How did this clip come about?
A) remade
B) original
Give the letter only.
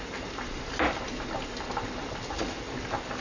B